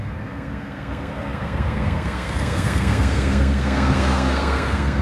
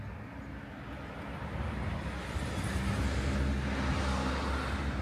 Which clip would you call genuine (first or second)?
second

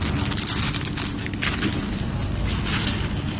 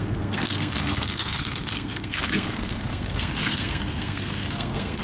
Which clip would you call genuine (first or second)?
first